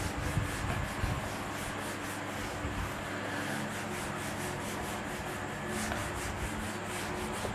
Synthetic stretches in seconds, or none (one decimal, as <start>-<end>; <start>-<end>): none